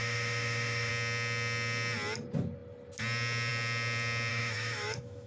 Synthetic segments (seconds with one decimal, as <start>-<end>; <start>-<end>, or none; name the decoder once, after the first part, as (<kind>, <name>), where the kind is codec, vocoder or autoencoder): 0.0-0.9 (autoencoder, DAC-VAE); 4.3-5.3